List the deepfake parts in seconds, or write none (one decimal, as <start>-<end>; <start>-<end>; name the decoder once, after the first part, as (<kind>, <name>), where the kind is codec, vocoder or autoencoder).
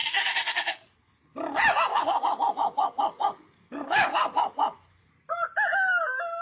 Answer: 0.0-1.0 (codec, DAC); 1.9-5.0